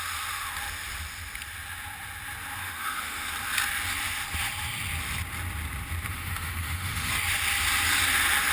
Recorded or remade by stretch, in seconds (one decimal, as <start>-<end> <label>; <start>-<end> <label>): 0.0-2.6 recorded; 2.6-3.3 remade; 3.3-6.1 recorded; 6.1-7.1 remade; 7.1-8.5 recorded